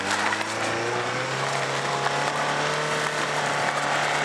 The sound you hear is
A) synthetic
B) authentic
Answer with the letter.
B